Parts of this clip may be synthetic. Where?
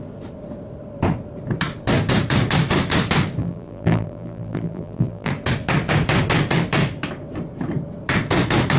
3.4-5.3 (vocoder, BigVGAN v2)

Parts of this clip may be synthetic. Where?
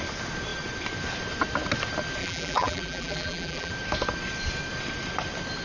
2.2-3.7 (vocoder, BigVGAN v2)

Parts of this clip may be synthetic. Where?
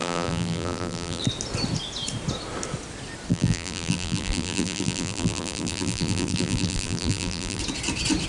0.0-1.2 (vocoder, BigVGAN v2); 3.3-7.6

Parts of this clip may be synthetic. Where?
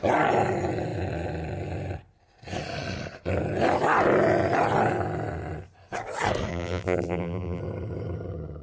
6.5-7.6 (vocoder, BigVGAN v2)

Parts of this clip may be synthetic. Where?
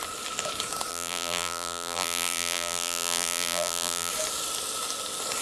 0.9-4.1 (vocoder, BigVGAN v2)